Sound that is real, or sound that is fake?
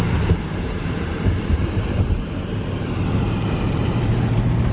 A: fake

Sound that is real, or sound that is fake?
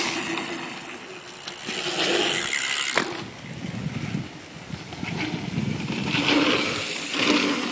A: real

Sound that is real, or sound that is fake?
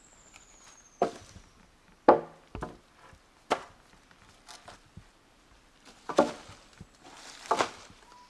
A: real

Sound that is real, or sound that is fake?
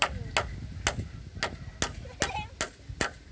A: real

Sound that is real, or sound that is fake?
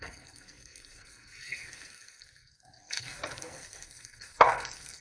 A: fake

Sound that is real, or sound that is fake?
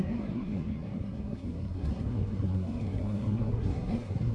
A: fake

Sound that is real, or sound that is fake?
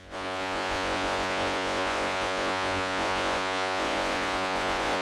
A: fake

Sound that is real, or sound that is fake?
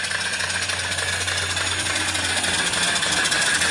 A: real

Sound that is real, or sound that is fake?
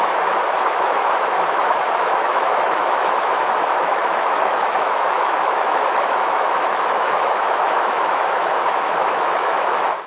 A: fake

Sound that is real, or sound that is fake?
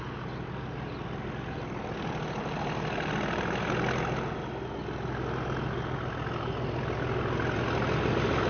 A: real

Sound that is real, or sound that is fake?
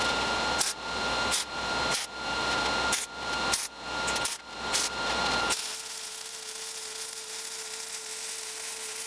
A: real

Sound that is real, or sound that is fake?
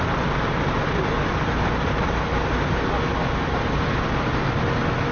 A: real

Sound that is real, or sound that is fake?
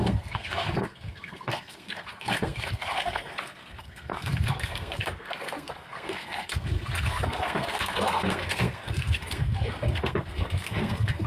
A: fake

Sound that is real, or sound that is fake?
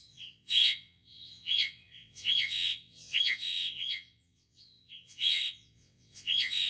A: fake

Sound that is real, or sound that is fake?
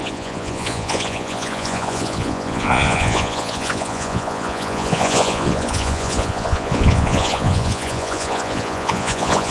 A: fake